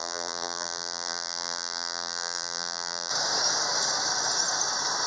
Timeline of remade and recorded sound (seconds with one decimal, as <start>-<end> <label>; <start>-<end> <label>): 0.0-3.1 remade; 3.1-5.1 recorded